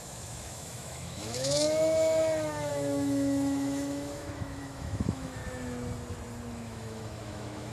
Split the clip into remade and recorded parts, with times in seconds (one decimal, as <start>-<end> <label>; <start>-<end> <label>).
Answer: 0.0-5.4 remade; 5.4-6.5 recorded; 6.5-7.7 remade